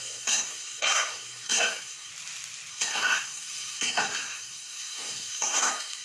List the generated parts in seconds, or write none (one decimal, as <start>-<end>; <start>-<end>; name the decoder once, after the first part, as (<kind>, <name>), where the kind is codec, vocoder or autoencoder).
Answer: 0.0-2.1 (codec, SNAC); 2.7-6.0